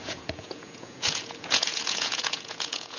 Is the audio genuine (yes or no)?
no